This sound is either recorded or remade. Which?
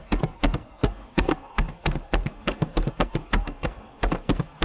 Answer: remade